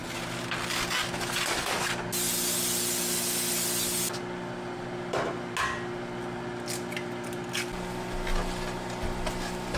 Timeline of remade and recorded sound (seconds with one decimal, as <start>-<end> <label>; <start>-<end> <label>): 0.0-9.8 recorded